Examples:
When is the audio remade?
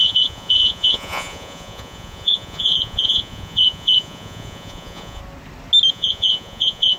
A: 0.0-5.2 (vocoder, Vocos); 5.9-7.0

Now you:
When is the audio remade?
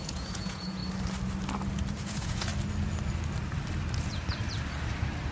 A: 0.0-0.8 (vocoder, Vocos); 1.9-2.5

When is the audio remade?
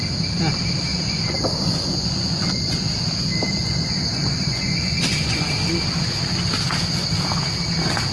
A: 0.9-2.9 (vocoder, Vocos); 3.6-5.5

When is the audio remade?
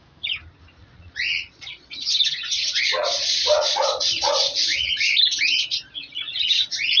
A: 0.8-4.9 (vocoder, Vocos); 5.7-6.3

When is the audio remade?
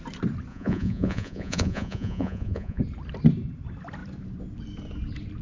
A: 0.5-2.8 (vocoder, Vocos)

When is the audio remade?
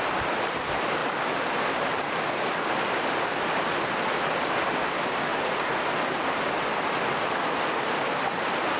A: 5.3-5.8 (vocoder, Vocos)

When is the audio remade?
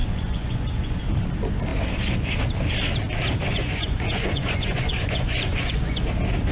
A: 0.0-1.0 (vocoder, Vocos); 3.5-6.0